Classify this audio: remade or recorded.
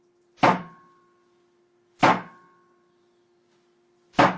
recorded